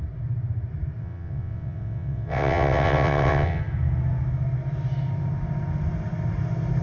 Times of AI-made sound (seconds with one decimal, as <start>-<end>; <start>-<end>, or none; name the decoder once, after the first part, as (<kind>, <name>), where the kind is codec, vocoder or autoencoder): 1.0-3.6 (vocoder, WaveNeXt)